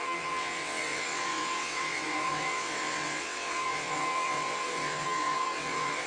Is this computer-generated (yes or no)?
yes